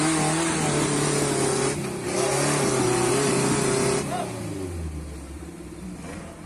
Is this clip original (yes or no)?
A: yes